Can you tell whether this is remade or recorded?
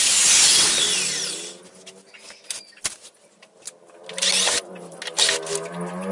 recorded